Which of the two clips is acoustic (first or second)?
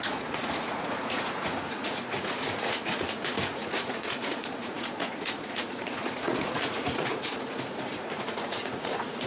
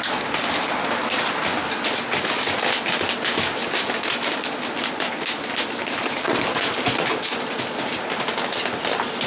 second